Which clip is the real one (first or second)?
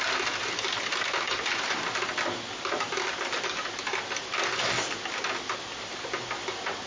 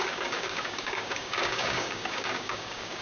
first